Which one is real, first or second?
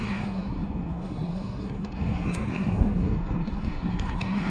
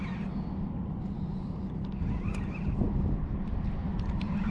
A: second